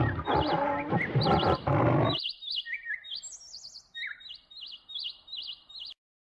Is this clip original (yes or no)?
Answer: yes